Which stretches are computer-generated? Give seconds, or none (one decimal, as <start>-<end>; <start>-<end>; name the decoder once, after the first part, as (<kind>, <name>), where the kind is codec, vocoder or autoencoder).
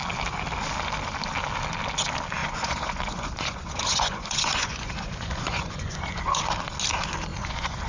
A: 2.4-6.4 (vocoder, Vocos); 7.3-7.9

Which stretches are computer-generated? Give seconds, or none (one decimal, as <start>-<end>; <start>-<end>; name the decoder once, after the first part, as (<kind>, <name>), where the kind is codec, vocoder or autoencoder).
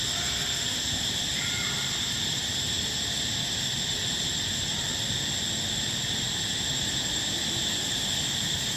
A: 2.4-4.2 (vocoder, BigVGAN v2)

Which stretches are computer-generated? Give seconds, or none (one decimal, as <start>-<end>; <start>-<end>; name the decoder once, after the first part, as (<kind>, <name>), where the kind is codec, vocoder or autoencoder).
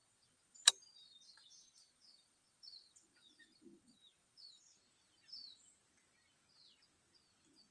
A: 0.0-4.6 (vocoder, BigVGAN v2)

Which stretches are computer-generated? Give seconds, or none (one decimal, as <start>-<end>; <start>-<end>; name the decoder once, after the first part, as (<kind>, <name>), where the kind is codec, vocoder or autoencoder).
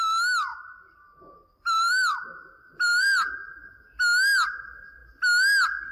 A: 0.5-4.0 (vocoder, BigVGAN v2)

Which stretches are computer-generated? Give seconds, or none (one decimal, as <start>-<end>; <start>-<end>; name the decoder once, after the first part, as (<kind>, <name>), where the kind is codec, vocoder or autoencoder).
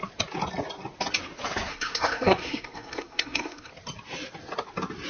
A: 1.7-3.7 (codec, SNAC)